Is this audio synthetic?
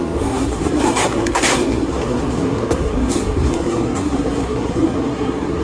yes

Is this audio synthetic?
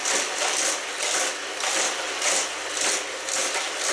no